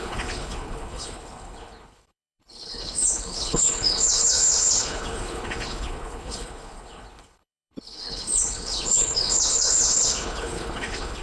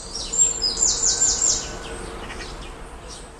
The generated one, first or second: first